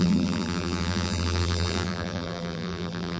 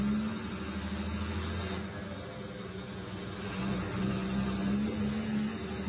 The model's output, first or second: first